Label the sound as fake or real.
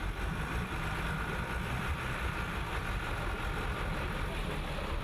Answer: real